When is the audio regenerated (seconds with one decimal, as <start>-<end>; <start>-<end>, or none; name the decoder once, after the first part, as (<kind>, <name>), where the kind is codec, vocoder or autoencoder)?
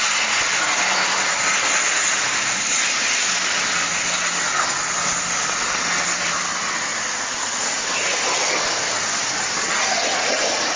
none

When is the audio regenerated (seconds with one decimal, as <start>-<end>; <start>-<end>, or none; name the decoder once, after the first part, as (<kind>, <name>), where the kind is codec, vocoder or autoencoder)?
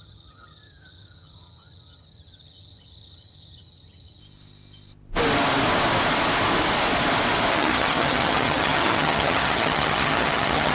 0.0-4.2 (vocoder, HiFi-GAN); 7.5-10.7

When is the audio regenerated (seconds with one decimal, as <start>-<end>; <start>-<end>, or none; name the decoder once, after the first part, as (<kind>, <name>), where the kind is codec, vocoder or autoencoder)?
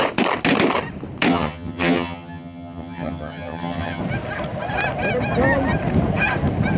1.3-4.0 (vocoder, HiFi-GAN)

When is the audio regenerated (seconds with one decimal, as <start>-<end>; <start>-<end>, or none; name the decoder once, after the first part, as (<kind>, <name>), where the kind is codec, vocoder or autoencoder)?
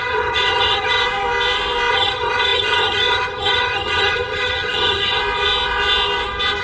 0.0-1.0 (vocoder, HiFi-GAN); 1.9-5.2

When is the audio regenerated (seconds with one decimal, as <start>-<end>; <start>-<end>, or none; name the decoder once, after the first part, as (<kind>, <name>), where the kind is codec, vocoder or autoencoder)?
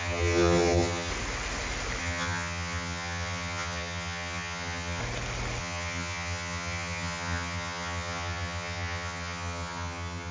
0.0-1.1 (vocoder, HiFi-GAN); 2.0-5.0; 5.6-10.3